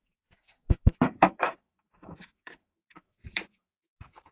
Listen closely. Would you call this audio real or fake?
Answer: fake